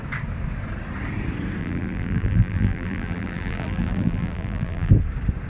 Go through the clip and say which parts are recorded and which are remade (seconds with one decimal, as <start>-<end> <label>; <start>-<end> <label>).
0.0-1.6 recorded; 1.6-4.9 remade; 4.9-5.5 recorded